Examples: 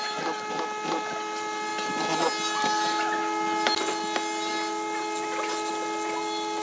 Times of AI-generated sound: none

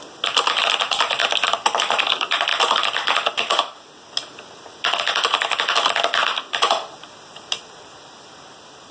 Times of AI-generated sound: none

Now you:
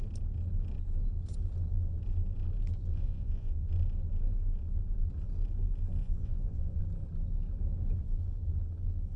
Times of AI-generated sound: 2.9-3.7 (vocoder, Vocos); 6.0-6.8